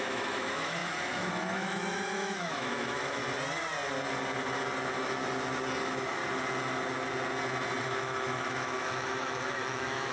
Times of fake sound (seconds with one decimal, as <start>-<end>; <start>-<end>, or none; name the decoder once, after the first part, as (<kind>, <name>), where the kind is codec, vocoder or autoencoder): 0.0-3.2 (autoencoder, DAC-VAE); 5.8-6.2; 7.8-10.1